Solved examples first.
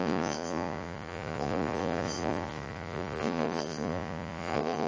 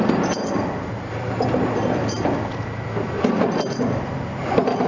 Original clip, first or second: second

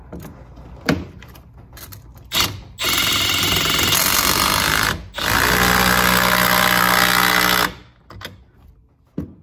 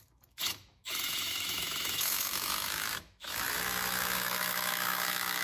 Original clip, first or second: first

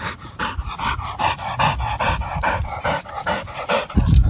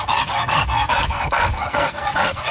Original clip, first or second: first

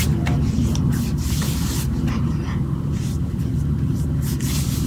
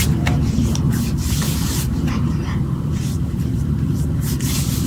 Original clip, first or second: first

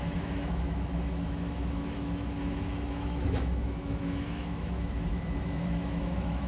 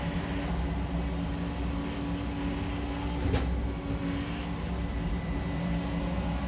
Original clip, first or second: second